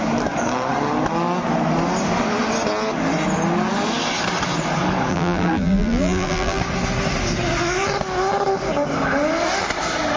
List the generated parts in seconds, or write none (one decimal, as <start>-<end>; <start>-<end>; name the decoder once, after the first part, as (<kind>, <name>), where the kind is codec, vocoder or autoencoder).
5.1-6.6 (vocoder, BigVGAN v2)